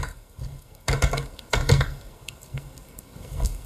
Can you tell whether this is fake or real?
fake